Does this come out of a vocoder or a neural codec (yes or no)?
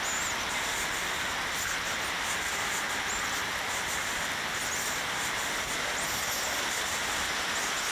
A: no